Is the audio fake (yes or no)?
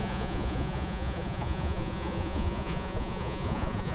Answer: yes